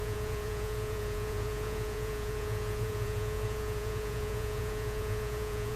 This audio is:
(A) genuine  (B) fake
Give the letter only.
B